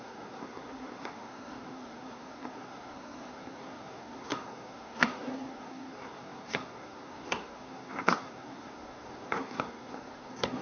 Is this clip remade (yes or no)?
yes